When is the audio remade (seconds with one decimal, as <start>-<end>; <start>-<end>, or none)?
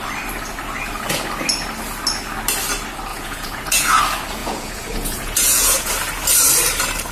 3.1-4.0; 4.4-5.9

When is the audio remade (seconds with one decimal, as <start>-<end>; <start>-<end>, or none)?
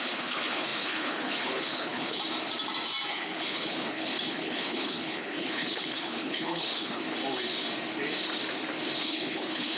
0.0-2.2; 3.1-7.0; 9.0-9.8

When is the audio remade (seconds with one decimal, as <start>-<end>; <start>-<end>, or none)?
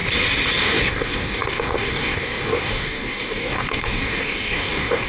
0.6-5.1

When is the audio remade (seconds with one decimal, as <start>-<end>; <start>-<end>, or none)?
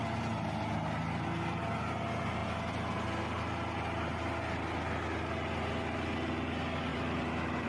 6.9-7.7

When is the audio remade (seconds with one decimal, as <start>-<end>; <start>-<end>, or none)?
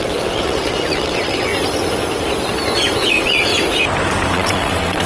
0.0-1.5; 3.0-3.5; 4.3-5.1